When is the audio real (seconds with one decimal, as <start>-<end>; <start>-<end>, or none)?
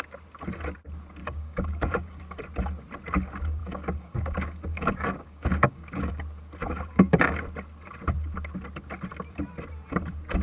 0.0-1.2; 2.2-3.6; 6.1-6.6; 7.3-10.4